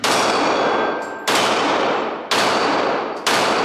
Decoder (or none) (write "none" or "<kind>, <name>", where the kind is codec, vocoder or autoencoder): none